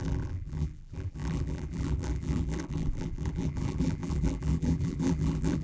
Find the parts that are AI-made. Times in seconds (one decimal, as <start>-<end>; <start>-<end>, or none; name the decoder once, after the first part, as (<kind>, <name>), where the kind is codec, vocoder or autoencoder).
0.0-5.6 (vocoder, BigVGAN v2)